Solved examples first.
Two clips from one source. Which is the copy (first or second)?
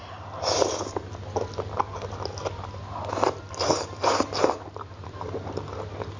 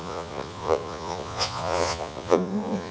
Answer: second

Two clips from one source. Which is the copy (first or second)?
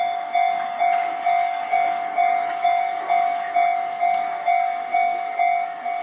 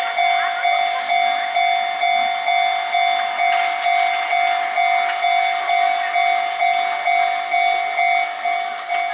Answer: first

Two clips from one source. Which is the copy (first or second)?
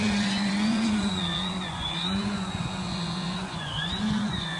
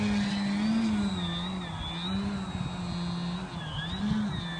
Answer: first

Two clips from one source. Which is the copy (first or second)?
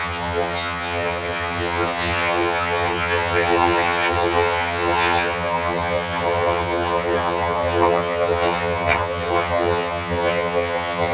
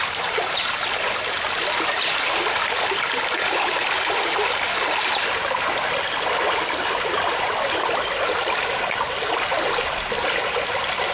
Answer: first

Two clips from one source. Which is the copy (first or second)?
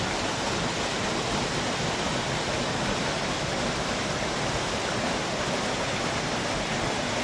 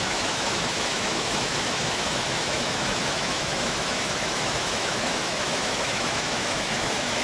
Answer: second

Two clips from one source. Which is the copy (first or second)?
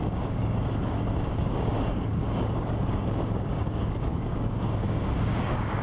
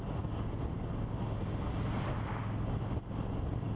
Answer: first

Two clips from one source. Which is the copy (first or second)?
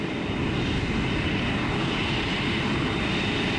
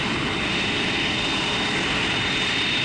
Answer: first